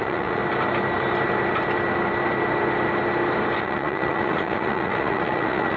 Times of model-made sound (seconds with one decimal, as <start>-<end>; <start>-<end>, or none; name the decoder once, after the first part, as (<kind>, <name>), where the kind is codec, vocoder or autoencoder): 0.0-0.4 (vocoder, Vocos); 3.6-5.8